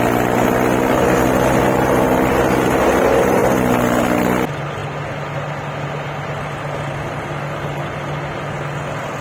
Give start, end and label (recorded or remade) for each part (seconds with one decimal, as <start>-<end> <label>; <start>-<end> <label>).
0.0-9.2 recorded